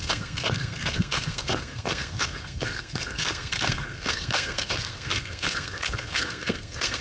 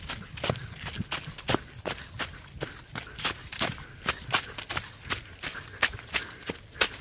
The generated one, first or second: first